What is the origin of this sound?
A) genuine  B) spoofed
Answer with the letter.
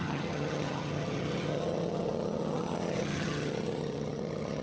B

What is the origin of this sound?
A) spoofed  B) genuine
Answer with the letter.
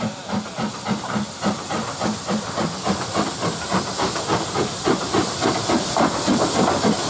B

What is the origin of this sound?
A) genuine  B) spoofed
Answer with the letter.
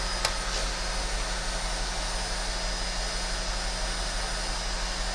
A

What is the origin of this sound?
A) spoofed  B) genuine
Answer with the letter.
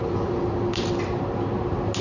B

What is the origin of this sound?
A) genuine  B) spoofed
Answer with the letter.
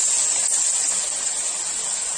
A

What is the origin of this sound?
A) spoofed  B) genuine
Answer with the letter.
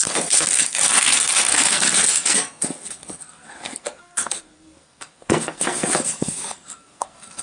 A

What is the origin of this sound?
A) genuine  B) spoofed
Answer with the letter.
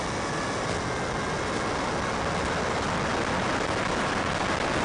A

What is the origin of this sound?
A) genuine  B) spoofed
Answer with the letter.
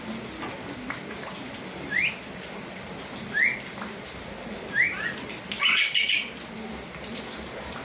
A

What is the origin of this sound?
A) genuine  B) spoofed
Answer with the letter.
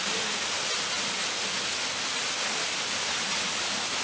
A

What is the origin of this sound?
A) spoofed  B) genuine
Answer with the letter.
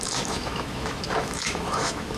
A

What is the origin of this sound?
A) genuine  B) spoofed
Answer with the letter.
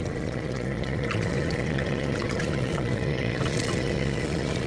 B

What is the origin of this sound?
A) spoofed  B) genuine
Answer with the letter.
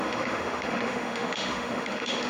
A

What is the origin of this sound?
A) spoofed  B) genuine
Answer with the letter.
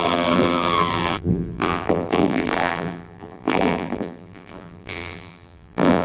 A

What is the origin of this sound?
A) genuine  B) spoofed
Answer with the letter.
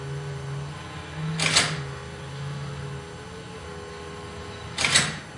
A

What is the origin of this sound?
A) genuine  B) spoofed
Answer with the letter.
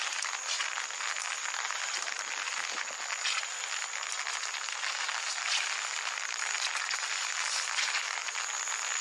A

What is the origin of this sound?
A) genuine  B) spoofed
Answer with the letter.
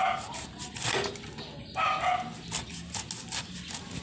A